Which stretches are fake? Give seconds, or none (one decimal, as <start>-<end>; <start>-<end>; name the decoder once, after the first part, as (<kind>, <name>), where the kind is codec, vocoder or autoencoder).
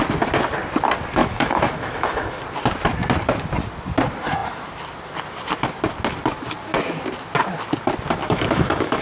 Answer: 1.2-2.4 (autoencoder, DAC-VAE); 8.2-9.0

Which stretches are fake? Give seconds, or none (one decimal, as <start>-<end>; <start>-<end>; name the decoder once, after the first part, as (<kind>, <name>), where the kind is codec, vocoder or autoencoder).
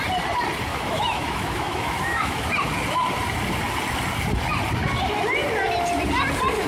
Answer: 0.7-2.5 (autoencoder, DAC-VAE)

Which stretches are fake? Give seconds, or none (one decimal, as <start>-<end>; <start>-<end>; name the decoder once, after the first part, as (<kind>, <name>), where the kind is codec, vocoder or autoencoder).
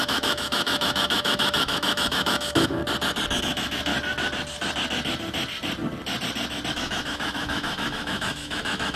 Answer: 0.0-2.8 (autoencoder, DAC-VAE); 3.4-3.9; 6.7-9.0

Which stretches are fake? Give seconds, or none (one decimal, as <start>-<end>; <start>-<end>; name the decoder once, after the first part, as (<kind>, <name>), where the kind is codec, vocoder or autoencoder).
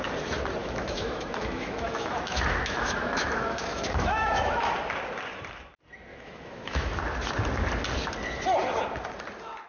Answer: 0.6-4.7 (autoencoder, DAC-VAE); 6.1-7.0